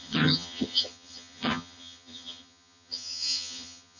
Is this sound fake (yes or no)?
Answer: yes